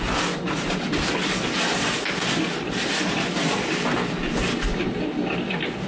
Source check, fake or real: real